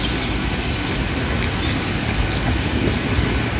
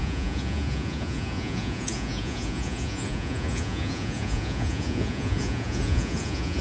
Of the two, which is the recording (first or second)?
first